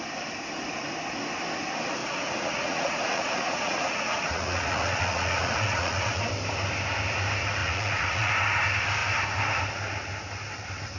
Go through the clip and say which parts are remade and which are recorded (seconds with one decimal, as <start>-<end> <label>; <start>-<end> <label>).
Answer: 0.0-2.0 recorded; 2.0-6.2 remade; 6.2-7.6 recorded; 7.6-8.3 remade; 8.3-11.0 recorded